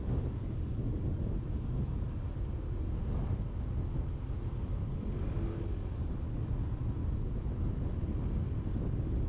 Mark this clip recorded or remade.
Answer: recorded